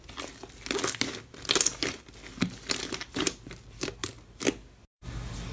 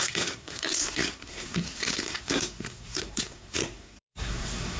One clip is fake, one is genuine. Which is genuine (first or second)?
first